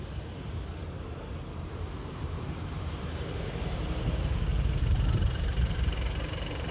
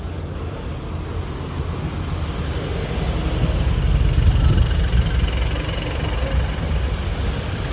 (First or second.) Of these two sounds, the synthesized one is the first